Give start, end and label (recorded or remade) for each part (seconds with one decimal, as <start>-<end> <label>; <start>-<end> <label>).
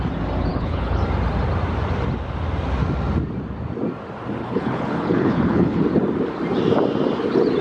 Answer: 0.0-0.5 recorded; 0.5-1.0 remade; 1.0-4.4 recorded; 4.4-5.8 remade; 5.8-7.6 recorded